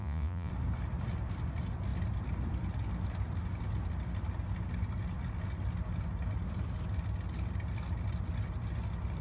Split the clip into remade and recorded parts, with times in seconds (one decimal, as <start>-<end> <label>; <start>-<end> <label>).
0.0-0.5 remade; 0.5-9.2 recorded